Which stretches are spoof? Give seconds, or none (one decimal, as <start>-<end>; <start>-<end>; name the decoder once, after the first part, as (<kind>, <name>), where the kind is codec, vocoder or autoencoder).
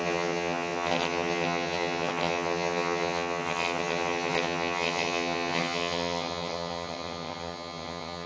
0.0-8.3 (vocoder, HiFi-GAN)